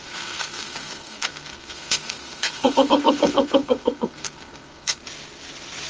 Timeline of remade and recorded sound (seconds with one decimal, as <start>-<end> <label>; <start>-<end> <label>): 0.0-5.0 remade; 5.0-5.9 recorded